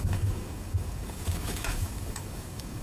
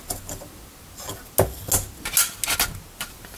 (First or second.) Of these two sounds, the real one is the second